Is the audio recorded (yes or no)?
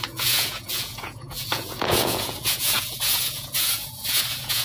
no